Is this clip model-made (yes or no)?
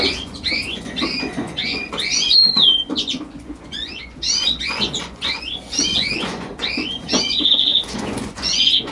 yes